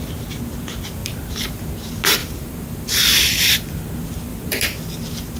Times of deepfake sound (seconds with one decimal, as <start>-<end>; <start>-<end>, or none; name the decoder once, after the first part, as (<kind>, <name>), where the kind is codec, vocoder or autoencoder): 1.0-1.6 (vocoder, BigVGAN v2); 2.2-3.9; 4.3-5.4